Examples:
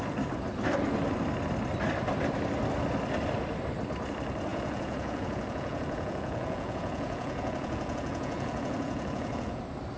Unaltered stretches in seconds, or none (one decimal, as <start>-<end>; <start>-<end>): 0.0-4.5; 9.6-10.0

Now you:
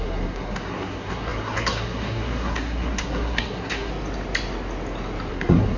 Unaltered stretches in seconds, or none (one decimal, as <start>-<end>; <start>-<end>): 3.9-5.3

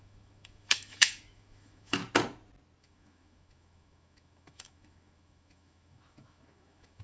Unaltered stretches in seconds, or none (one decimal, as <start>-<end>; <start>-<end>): 2.0-2.8

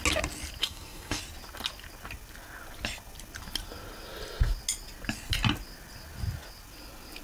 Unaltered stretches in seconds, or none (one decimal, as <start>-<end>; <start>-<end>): 0.0-0.6; 1.2-7.2